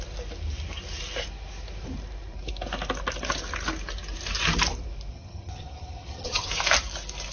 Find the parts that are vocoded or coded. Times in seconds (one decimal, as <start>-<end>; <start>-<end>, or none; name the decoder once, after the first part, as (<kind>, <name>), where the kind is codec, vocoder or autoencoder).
5.1-6.5 (vocoder, HiFi-GAN)